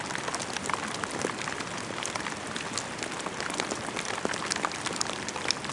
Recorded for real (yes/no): yes